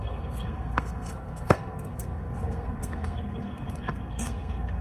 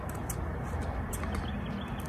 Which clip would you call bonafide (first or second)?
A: second